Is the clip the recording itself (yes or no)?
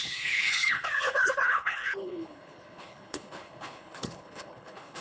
no